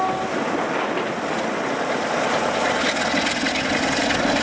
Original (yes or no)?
yes